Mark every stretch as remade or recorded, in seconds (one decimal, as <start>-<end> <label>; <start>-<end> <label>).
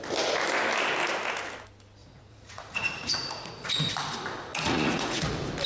0.0-2.0 recorded; 2.0-3.9 remade; 3.9-4.5 recorded; 4.5-5.3 remade; 5.3-5.7 recorded